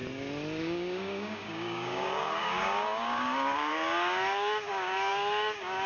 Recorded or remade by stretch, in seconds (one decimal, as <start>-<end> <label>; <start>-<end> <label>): 0.0-0.6 recorded; 0.6-5.9 remade